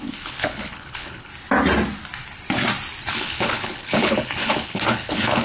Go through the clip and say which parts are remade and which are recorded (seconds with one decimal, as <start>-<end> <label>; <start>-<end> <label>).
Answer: 0.0-1.3 remade; 1.3-3.1 recorded; 3.1-5.4 remade